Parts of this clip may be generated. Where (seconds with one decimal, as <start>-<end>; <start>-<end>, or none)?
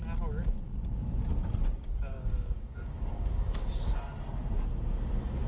2.1-4.0